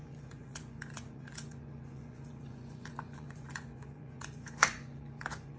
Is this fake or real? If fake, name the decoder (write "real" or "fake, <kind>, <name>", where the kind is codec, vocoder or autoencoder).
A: fake, vocoder, Vocos